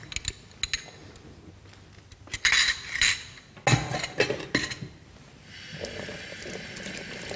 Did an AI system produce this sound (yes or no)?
no